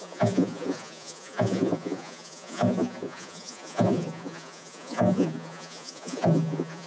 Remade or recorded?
remade